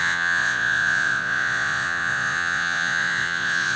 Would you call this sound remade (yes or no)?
yes